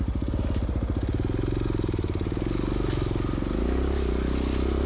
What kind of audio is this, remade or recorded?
recorded